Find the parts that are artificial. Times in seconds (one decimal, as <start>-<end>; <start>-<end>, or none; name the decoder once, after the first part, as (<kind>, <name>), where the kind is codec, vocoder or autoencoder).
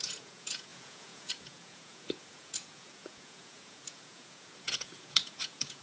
0.0-5.8 (vocoder, Vocos)